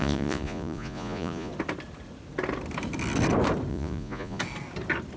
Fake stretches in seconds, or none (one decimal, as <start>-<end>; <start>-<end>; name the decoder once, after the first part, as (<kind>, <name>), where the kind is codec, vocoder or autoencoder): 0.0-1.5 (vocoder, Vocos); 3.7-4.4